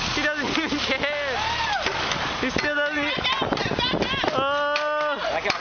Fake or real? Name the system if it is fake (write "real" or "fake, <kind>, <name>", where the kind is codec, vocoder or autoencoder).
real